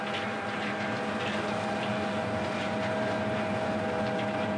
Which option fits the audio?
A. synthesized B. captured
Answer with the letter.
B